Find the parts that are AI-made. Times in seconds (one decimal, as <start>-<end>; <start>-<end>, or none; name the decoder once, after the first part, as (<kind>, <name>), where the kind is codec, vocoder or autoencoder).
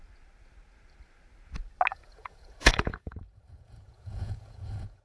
1.9-5.0 (vocoder, Vocos)